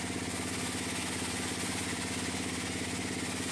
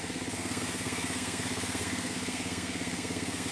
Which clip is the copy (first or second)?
second